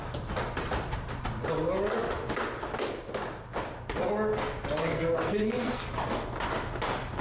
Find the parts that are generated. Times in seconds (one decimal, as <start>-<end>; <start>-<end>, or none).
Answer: 4.8-5.8

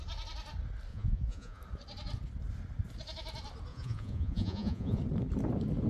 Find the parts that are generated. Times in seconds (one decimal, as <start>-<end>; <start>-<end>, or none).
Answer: 0.9-1.6; 3.7-5.0